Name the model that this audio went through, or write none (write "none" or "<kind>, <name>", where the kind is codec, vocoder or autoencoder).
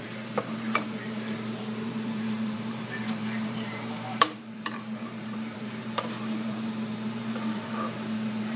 vocoder, BigVGAN v2